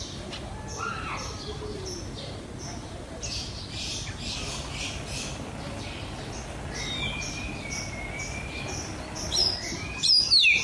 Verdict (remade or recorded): recorded